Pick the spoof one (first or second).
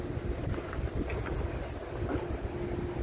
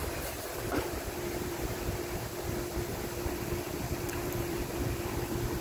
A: second